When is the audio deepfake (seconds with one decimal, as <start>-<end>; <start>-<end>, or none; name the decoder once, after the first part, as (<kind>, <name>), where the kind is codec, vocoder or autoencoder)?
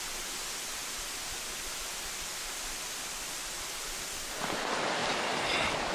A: 0.8-4.3 (vocoder, BigVGAN v2); 5.0-5.9